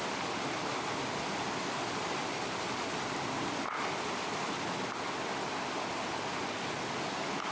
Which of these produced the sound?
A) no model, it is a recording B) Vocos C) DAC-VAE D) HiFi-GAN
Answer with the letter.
A